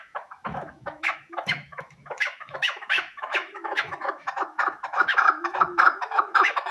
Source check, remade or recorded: remade